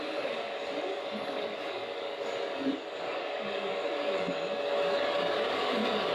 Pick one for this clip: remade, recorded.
remade